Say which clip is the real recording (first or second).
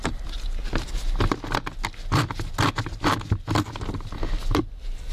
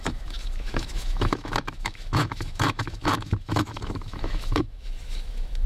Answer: first